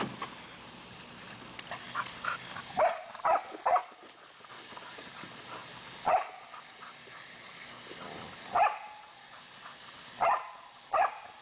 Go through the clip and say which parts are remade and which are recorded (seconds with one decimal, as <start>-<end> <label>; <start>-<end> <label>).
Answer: 0.0-11.4 recorded